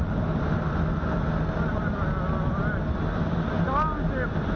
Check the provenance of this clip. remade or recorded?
recorded